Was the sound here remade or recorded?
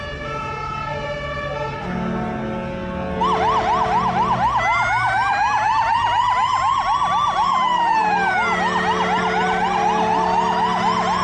recorded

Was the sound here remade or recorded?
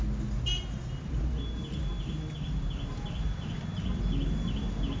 recorded